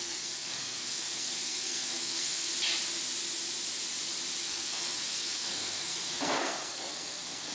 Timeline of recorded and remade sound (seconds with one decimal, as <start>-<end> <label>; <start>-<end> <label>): 0.0-2.5 remade; 2.5-4.4 recorded; 4.4-7.5 remade